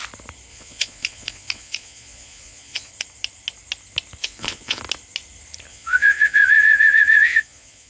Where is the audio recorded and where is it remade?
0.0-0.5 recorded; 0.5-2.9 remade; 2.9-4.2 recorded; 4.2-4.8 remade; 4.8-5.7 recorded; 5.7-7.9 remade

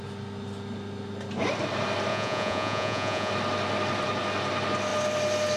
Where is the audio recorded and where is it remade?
0.0-2.1 recorded; 2.1-3.3 remade; 3.3-5.6 recorded

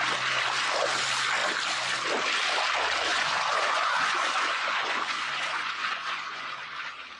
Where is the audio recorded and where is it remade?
0.0-3.1 recorded; 3.1-6.7 remade; 6.7-7.2 recorded

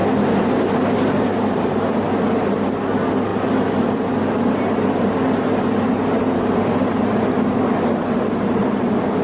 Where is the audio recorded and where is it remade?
0.0-9.2 recorded

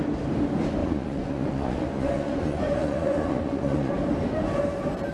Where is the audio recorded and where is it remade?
0.0-0.8 recorded; 0.8-3.9 remade; 3.9-5.1 recorded

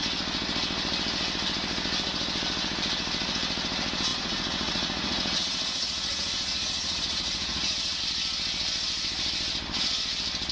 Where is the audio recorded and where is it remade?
0.0-4.1 recorded; 4.1-8.0 remade; 8.0-10.5 recorded

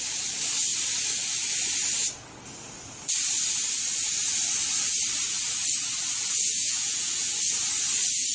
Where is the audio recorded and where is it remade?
0.0-6.5 recorded; 6.5-7.3 remade; 7.3-8.3 recorded